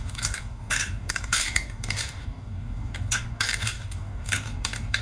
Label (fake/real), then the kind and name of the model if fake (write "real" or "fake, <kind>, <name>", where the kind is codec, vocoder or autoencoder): fake, codec, DAC